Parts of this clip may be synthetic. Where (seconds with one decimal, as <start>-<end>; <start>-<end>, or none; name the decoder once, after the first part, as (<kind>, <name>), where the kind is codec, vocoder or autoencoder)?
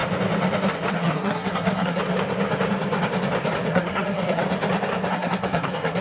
0.9-2.0 (codec, SNAC); 3.7-4.4; 5.1-6.0